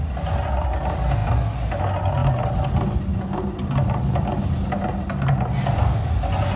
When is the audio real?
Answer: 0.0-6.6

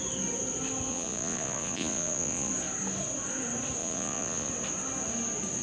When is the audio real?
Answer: 0.0-0.9; 2.5-3.8; 4.5-5.6